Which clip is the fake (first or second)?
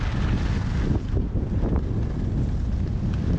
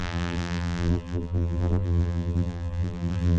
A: second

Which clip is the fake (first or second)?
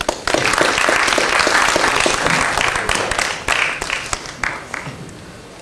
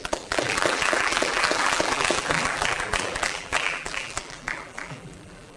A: second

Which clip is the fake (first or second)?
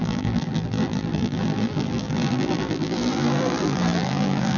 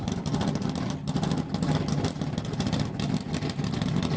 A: first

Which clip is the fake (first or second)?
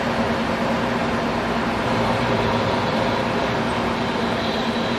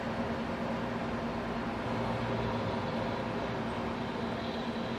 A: first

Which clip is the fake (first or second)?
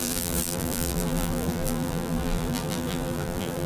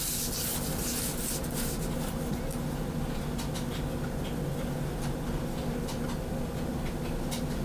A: first